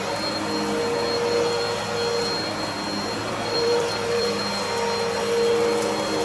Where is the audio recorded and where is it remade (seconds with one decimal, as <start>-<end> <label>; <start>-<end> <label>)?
0.0-3.2 recorded; 3.2-4.4 remade; 4.4-6.2 recorded